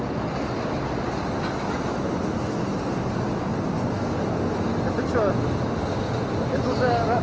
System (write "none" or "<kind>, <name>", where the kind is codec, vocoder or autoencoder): none